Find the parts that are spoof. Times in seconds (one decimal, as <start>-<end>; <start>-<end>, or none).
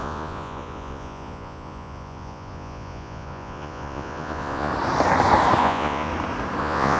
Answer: 0.0-4.7; 5.6-6.1; 6.6-7.0